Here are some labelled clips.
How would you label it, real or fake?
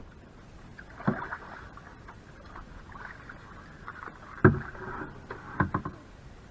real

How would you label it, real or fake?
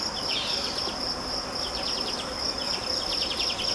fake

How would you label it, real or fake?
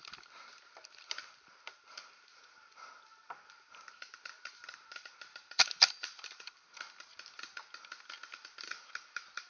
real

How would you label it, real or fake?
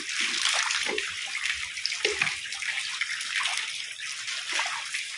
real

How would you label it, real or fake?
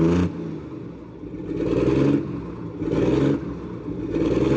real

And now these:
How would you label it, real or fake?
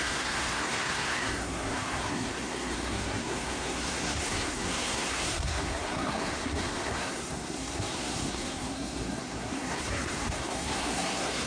fake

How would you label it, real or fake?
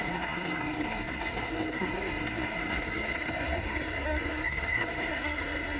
fake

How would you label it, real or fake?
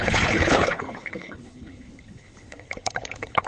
fake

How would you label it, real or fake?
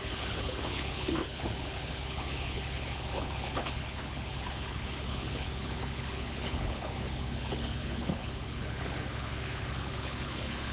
fake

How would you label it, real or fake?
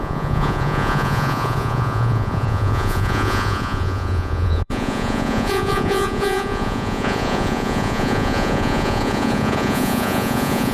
fake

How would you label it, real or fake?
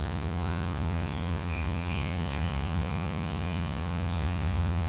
fake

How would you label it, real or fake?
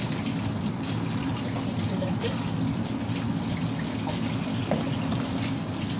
real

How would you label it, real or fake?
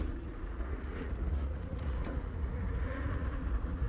fake